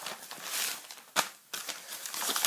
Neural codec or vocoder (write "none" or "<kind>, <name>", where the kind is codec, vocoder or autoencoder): none